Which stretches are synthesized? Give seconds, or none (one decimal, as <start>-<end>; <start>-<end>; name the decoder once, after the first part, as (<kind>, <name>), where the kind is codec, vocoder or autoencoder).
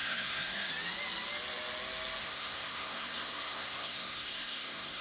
0.0-0.7 (codec, SNAC); 2.2-5.0